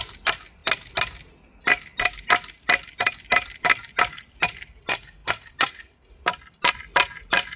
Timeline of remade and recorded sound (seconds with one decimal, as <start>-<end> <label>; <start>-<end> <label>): 0.0-7.6 recorded